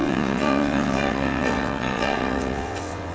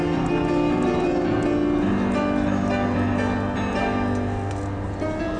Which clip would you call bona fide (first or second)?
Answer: second